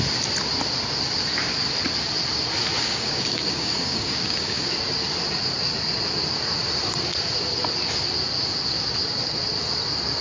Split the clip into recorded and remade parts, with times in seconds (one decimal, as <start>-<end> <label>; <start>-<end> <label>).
0.0-2.8 recorded; 2.8-4.6 remade; 4.6-10.2 recorded